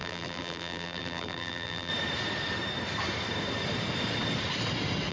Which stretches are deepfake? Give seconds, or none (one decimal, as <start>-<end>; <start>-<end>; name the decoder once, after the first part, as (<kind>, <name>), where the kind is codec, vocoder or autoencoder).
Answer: 0.0-1.9 (vocoder, BigVGAN v2)